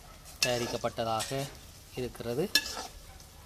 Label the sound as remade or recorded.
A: recorded